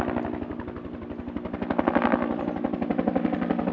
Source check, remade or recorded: recorded